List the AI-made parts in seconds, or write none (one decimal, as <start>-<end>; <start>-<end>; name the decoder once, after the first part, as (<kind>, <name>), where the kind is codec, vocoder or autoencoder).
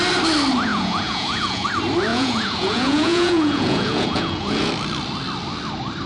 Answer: 0.7-1.7 (vocoder, Vocos); 2.1-4.7